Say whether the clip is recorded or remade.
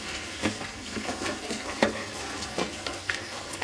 remade